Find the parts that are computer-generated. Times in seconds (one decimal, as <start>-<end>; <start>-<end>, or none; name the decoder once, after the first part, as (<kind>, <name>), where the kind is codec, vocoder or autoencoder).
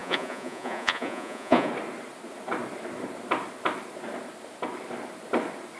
0.0-1.7 (vocoder, Vocos)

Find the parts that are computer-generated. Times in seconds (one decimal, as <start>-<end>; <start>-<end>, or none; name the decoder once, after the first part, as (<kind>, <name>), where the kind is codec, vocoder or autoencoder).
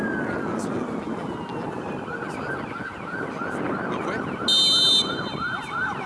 none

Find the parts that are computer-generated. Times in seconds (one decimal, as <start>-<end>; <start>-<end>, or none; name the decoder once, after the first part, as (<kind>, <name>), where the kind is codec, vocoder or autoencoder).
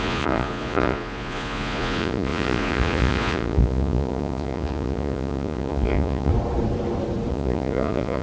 0.0-6.3 (vocoder, Vocos); 7.3-8.2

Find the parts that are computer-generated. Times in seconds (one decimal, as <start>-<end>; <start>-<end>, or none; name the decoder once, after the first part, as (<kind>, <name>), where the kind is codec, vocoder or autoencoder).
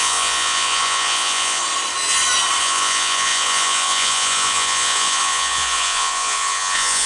0.0-1.6 (vocoder, Vocos); 2.6-7.1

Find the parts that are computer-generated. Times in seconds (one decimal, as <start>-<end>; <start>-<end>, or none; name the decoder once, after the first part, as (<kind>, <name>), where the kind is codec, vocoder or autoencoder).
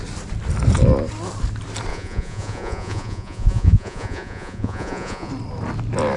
1.9-5.3 (vocoder, Vocos)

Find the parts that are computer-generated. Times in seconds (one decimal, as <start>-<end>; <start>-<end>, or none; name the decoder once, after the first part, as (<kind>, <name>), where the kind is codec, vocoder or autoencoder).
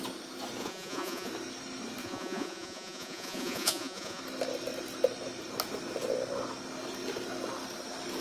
0.6-1.3 (vocoder, Vocos); 2.0-4.2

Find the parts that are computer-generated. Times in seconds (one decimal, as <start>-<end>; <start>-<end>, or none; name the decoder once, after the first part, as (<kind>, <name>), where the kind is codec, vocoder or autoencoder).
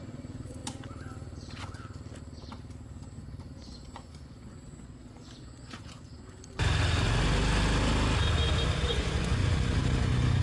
0.0-0.6 (vocoder, Vocos); 3.4-6.1; 8.9-9.4